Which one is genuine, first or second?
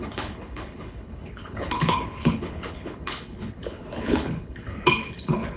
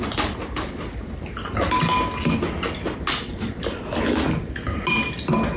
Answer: second